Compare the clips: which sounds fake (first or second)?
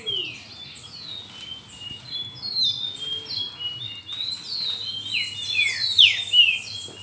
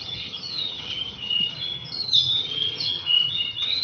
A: second